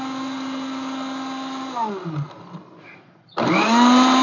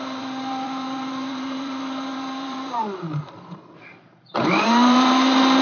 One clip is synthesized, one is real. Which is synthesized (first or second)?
second